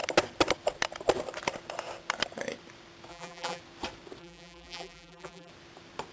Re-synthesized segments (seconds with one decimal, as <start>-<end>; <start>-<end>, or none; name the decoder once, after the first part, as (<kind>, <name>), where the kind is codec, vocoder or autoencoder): 3.1-3.6 (vocoder, BigVGAN v2); 4.2-5.5